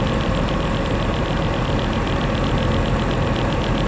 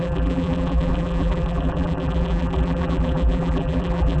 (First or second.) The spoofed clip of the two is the second